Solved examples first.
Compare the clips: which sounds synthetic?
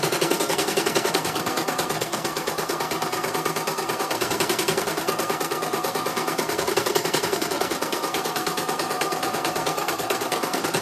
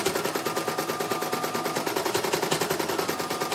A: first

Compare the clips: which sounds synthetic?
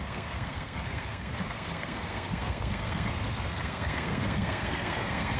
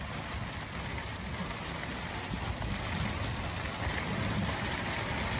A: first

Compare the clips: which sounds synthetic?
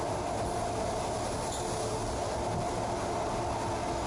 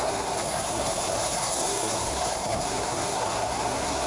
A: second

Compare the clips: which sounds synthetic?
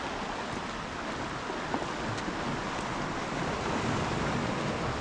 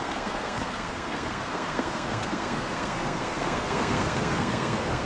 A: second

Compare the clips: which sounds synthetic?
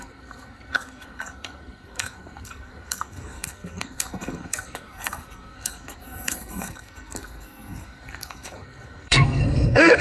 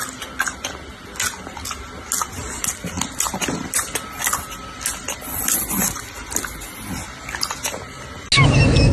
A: first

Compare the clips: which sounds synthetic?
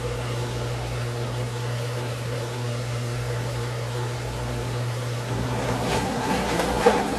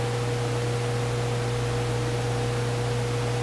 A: first